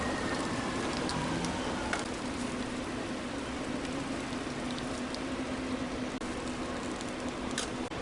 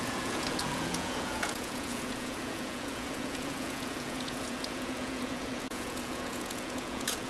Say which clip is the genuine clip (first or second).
first